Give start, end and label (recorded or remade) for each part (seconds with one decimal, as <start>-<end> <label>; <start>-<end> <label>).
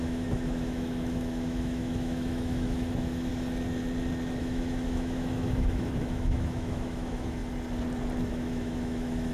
0.0-3.3 remade; 3.3-4.4 recorded; 4.4-7.4 remade; 7.4-8.3 recorded; 8.3-9.3 remade